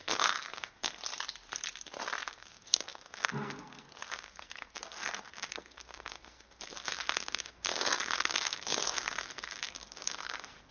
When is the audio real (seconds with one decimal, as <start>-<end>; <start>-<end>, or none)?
1.0-2.3

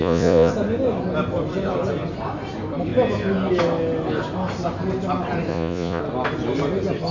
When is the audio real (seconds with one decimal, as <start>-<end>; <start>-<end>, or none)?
0.5-5.5; 6.0-7.1

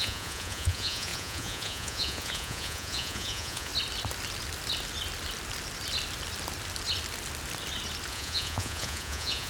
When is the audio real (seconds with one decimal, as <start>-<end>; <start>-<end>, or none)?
3.7-8.1

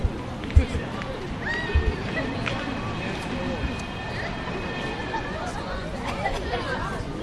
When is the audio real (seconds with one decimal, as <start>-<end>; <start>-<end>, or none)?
0.0-5.0

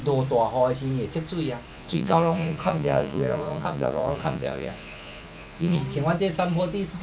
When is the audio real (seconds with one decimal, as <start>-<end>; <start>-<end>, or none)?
0.0-1.7; 5.8-7.0

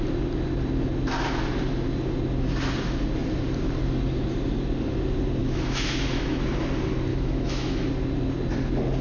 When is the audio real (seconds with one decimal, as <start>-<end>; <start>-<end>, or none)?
0.0-5.4; 6.4-7.1; 7.9-9.0